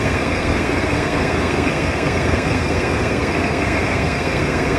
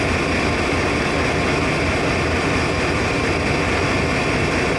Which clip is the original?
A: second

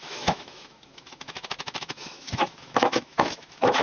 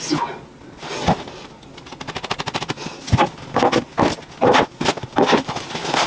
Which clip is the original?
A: second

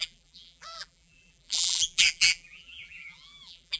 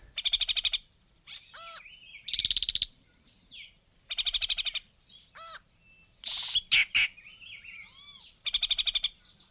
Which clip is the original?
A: second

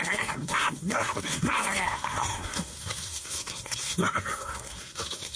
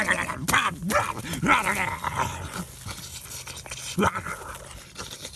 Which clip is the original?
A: second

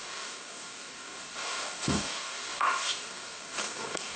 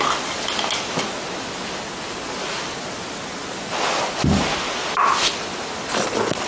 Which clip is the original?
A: second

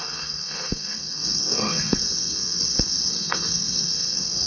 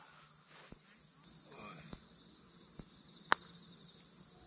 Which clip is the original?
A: second